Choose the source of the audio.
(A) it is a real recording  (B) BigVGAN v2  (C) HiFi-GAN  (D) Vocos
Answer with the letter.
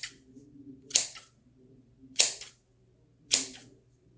A